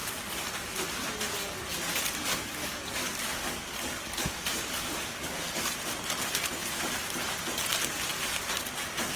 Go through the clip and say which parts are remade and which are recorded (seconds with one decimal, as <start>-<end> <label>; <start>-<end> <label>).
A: 0.0-2.3 recorded; 2.3-5.7 remade; 5.7-9.2 recorded